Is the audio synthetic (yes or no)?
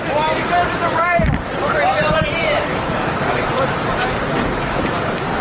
yes